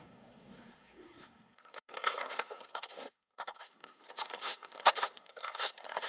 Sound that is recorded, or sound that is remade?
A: remade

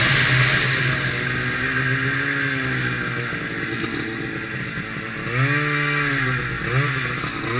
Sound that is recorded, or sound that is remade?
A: recorded